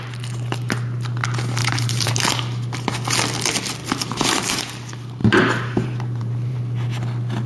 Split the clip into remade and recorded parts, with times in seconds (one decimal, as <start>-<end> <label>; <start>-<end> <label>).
0.0-1.6 recorded; 1.6-2.1 remade; 2.1-3.8 recorded; 3.8-4.6 remade; 4.6-5.2 recorded; 5.2-6.6 remade; 6.6-7.5 recorded